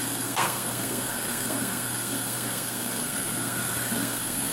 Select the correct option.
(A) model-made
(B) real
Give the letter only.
A